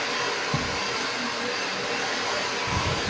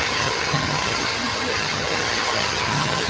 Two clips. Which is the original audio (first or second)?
first